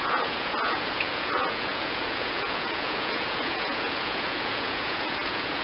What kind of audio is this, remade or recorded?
remade